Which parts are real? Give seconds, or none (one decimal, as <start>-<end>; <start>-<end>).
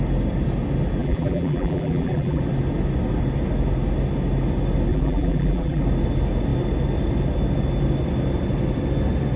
0.0-1.0; 2.4-4.9; 5.8-9.4